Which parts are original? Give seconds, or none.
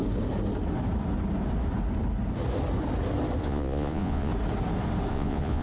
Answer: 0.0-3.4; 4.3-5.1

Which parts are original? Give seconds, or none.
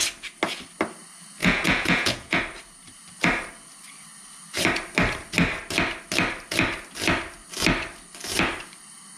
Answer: 0.0-1.4; 2.4-9.2